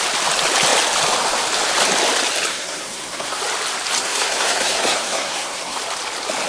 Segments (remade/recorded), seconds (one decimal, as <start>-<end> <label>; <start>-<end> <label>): 0.0-2.5 recorded; 2.5-3.4 remade; 3.4-4.0 recorded; 4.0-5.8 remade; 5.8-6.5 recorded